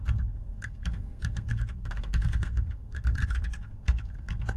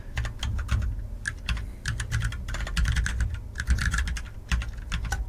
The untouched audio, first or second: second